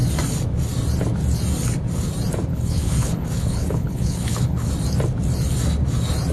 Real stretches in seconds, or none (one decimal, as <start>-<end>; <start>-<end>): 0.0-2.5; 4.7-6.3